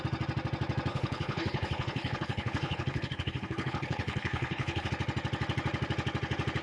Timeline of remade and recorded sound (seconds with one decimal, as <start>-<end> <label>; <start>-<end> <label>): 0.0-0.9 recorded; 0.9-4.9 remade; 4.9-6.6 recorded